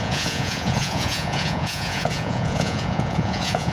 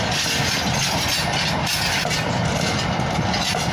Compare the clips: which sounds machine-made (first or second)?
first